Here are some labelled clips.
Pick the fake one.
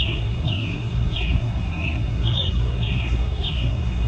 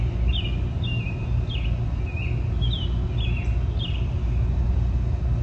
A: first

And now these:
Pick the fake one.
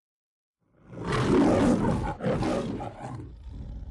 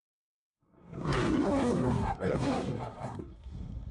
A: second